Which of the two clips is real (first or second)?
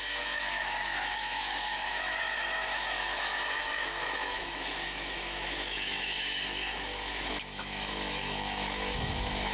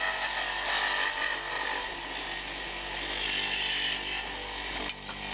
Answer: second